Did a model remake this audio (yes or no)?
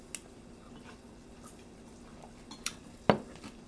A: no